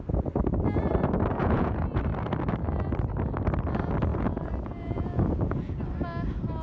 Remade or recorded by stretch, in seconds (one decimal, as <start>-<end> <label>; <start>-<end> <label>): 0.0-1.4 recorded; 1.4-2.0 remade; 2.0-4.1 recorded; 4.1-5.7 remade; 5.7-6.6 recorded